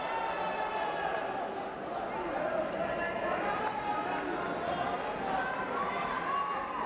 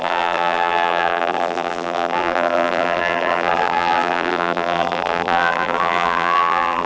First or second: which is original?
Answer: first